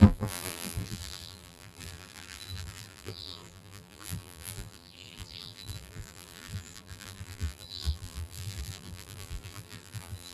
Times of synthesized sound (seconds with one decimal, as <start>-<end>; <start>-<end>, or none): 0.0-10.3